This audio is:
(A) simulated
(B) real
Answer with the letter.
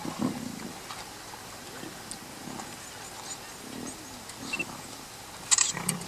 B